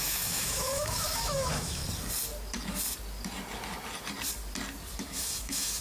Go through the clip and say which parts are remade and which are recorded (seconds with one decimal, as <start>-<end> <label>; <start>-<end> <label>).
0.0-1.8 remade; 1.8-5.0 recorded; 5.0-5.8 remade